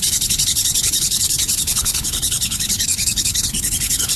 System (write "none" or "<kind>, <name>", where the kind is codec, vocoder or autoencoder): codec, HILCodec